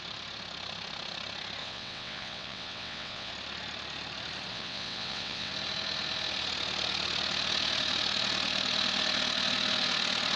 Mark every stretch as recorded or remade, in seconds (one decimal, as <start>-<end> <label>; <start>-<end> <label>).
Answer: 0.0-1.6 recorded; 1.6-3.3 remade; 3.3-4.5 recorded; 4.5-5.5 remade; 5.5-10.4 recorded